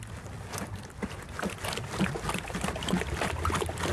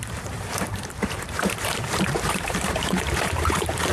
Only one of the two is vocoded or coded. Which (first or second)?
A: second